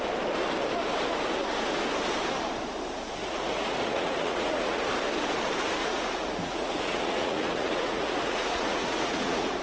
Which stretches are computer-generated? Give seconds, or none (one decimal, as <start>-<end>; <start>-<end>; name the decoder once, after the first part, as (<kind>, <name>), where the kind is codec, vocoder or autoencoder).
3.2-4.8 (vocoder, Vocos); 5.8-9.6